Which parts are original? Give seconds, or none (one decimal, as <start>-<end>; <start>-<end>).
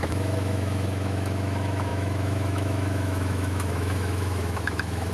none